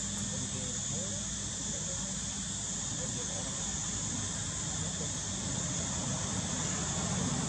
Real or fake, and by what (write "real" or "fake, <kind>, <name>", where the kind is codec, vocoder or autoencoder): real